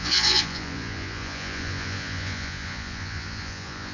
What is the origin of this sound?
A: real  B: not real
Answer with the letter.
B